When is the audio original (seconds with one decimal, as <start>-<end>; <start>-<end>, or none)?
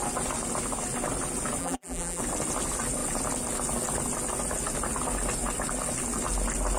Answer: 0.0-1.6; 2.2-6.8